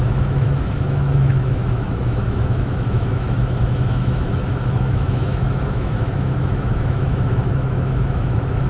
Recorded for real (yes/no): no